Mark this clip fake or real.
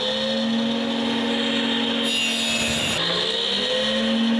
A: real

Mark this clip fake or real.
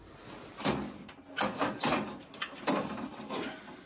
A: real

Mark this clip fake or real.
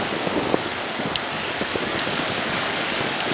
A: fake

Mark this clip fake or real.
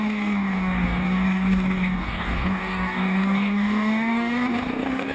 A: fake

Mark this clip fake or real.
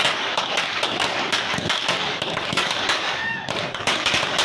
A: fake